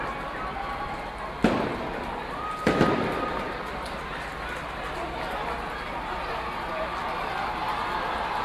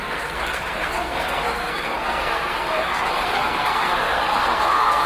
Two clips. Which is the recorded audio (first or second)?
first